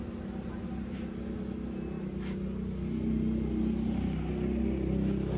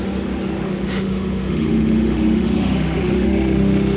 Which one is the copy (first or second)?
second